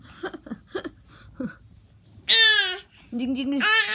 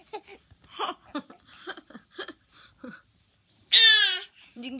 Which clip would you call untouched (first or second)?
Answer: first